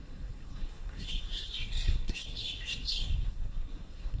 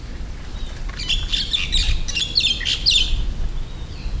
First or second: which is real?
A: second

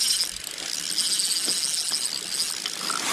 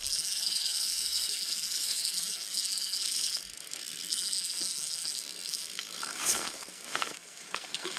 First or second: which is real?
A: first